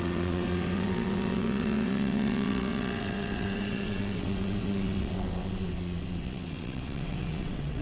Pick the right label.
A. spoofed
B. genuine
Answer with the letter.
A